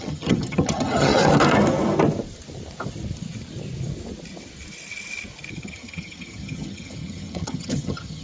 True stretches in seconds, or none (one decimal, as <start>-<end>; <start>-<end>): 1.2-5.5